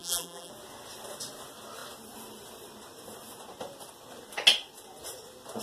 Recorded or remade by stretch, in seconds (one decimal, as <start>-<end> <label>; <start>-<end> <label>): 0.0-0.5 remade; 0.5-5.6 recorded